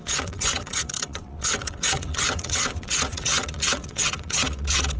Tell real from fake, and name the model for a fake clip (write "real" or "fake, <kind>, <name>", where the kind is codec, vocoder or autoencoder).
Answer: fake, vocoder, WaveNeXt